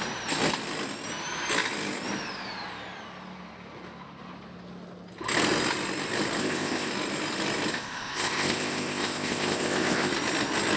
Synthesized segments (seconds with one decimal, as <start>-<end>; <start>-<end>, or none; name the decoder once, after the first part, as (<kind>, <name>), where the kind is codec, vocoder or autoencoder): 6.4-6.9 (codec, ZipCodec); 7.7-10.1